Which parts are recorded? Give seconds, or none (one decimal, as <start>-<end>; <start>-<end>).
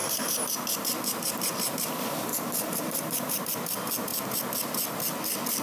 3.4-5.6